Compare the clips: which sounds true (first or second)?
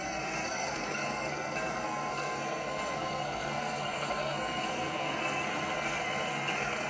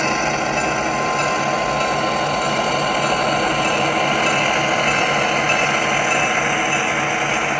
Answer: second